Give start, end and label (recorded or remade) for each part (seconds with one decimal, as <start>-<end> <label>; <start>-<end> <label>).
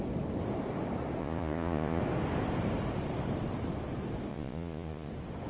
0.0-1.2 recorded; 1.2-2.0 remade; 2.0-4.3 recorded; 4.3-5.1 remade; 5.1-5.5 recorded